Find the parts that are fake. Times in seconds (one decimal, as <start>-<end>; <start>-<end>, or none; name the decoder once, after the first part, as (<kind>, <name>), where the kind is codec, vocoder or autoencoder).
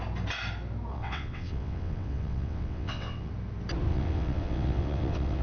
0.9-3.3 (vocoder, WaveNeXt); 3.9-5.4